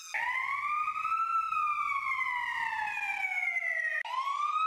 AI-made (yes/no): no